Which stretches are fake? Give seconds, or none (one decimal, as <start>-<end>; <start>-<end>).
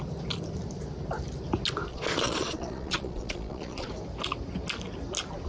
1.9-3.9